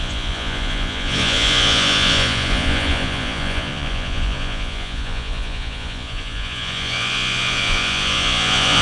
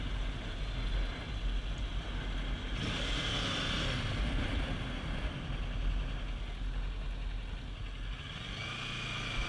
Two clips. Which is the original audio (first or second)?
second